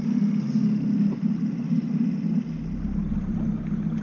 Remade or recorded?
recorded